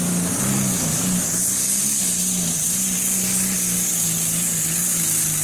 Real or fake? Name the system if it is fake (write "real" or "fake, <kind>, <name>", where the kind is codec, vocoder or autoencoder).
real